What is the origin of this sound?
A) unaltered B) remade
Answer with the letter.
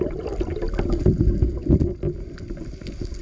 A